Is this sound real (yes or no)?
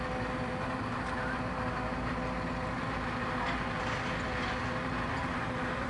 yes